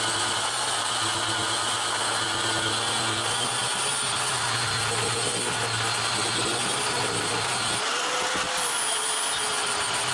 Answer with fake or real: real